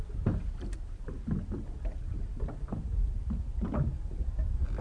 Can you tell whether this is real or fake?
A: real